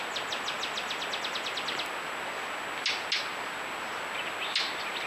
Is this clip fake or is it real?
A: real